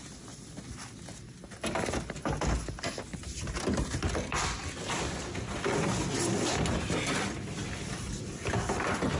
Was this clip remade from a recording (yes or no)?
no